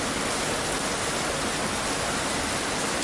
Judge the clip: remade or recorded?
recorded